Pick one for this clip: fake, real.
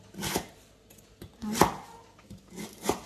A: real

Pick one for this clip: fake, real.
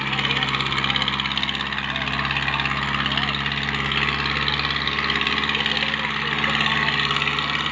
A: real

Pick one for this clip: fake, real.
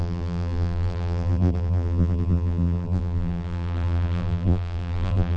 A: fake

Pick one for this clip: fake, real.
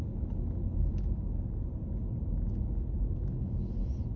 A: real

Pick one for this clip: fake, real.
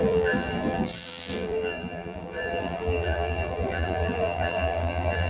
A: fake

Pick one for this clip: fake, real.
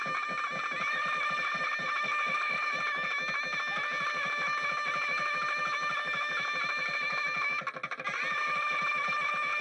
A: real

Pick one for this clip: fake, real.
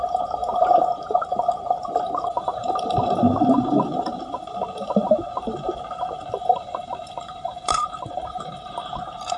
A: fake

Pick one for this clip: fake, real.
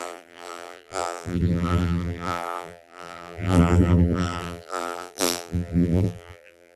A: fake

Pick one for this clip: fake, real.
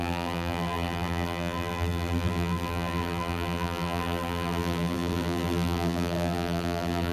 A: fake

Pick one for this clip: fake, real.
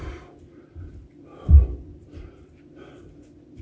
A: fake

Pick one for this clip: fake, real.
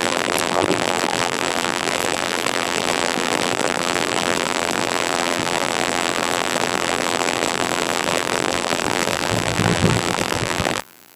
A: fake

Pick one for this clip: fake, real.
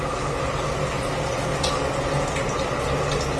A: real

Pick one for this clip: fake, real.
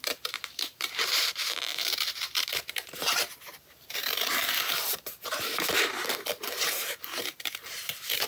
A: fake